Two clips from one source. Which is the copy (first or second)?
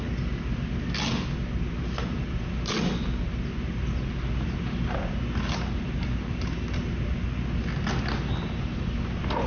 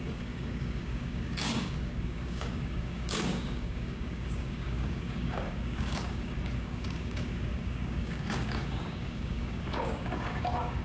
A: second